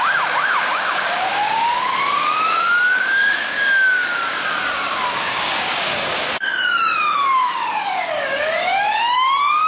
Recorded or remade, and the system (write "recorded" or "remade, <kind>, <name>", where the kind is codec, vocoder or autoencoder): remade, codec, DAC